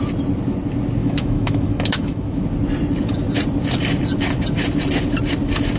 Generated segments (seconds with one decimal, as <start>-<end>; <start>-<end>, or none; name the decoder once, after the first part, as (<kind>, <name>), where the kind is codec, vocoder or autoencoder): 1.0-2.4 (autoencoder, DAC-VAE)